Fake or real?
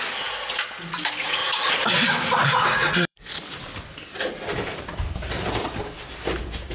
fake